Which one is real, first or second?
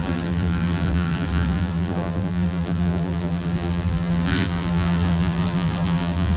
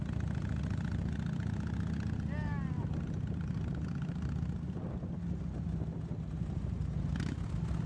second